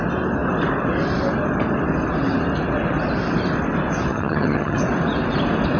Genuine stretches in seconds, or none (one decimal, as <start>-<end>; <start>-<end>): 0.0-4.1; 4.8-5.8